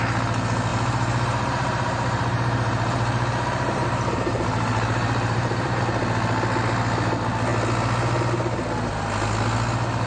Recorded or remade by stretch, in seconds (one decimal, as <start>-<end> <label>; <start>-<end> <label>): 0.0-0.7 recorded; 0.7-5.8 remade; 5.8-10.1 recorded